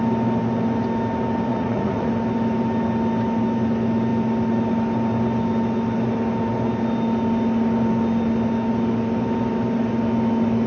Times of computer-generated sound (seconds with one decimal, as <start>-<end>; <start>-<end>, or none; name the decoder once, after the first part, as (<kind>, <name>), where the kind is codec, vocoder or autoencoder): 1.5-2.1 (vocoder, Vocos)